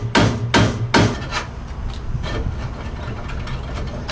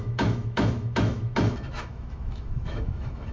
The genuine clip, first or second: first